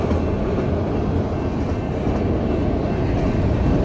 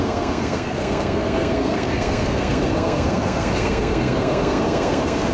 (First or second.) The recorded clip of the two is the first